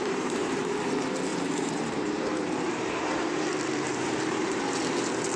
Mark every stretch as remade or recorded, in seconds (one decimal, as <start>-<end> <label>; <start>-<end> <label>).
0.0-0.6 remade; 0.6-1.3 recorded; 1.3-4.5 remade; 4.5-5.4 recorded